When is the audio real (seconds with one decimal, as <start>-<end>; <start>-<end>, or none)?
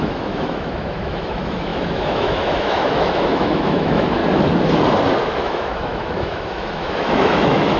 4.2-5.2